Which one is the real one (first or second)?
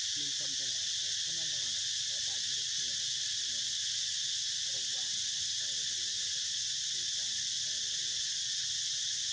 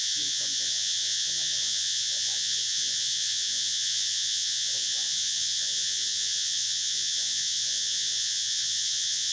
first